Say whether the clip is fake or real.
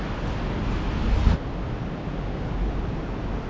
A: real